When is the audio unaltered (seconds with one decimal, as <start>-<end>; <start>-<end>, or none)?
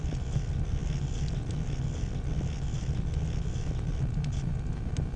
0.0-5.2